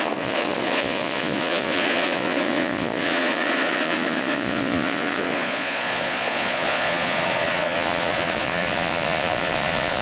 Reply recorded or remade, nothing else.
remade